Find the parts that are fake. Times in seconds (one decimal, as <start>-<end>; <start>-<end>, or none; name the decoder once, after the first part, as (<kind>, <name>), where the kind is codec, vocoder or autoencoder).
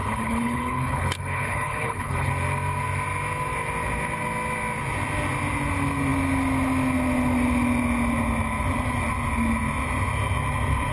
0.0-2.3 (codec, HILCodec)